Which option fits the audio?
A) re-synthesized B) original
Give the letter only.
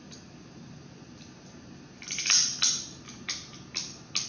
B